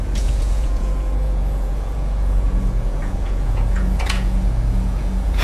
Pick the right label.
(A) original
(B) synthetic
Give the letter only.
B